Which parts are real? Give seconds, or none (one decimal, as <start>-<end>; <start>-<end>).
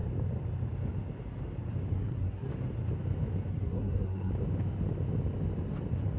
0.0-1.9; 2.5-3.5; 4.3-6.2